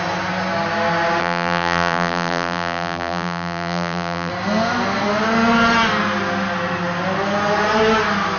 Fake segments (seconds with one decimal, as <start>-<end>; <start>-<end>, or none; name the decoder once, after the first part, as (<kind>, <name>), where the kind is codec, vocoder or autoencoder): 1.2-4.3 (vocoder, BigVGAN v2)